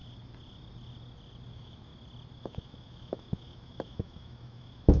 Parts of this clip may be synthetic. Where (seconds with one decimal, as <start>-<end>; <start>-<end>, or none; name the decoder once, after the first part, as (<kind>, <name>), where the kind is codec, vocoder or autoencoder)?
1.5-1.9 (autoencoder, DAC-VAE); 2.4-5.0